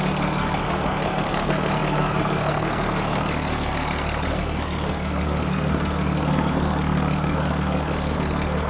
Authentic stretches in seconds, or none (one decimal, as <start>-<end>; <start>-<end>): none